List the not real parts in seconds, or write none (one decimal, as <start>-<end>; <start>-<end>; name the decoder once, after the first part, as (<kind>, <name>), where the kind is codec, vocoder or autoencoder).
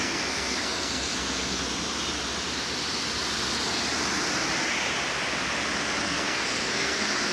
0.0-1.6 (codec, SNAC); 6.0-7.3